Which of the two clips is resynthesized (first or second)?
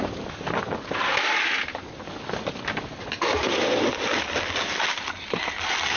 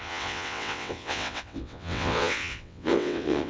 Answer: second